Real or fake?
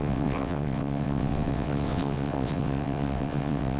fake